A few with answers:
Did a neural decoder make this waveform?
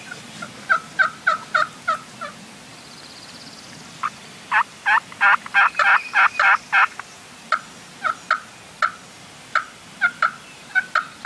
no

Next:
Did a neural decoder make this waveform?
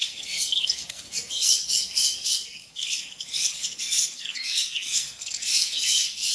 yes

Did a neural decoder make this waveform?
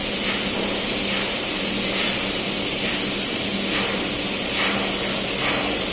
no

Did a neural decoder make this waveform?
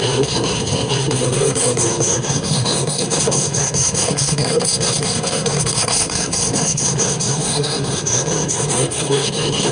yes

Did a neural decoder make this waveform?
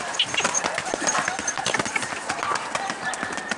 no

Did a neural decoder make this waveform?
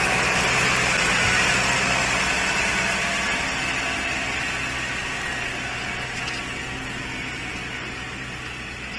no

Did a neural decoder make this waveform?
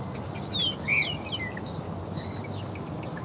no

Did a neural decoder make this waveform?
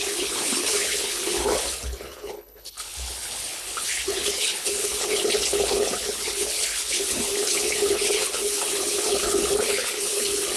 yes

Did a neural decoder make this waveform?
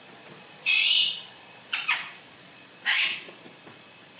yes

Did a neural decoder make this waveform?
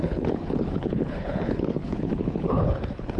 yes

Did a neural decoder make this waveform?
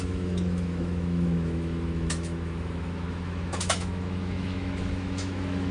yes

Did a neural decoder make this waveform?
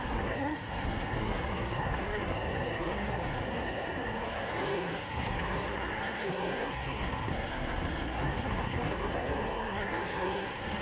yes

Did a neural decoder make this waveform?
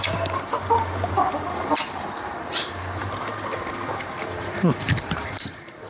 yes